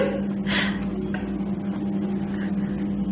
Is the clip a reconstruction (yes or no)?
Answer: no